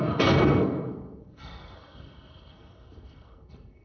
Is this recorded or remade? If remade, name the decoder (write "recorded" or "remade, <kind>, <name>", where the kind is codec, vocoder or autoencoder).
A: remade, codec, SNAC